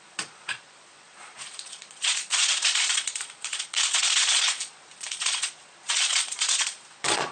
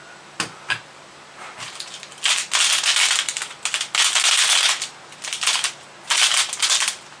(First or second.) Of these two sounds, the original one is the second